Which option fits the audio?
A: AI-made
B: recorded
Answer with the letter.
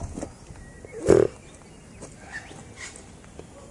B